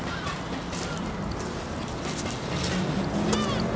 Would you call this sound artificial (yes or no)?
no